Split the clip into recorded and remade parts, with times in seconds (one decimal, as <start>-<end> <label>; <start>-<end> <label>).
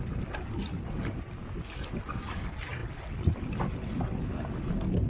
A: 0.0-5.1 recorded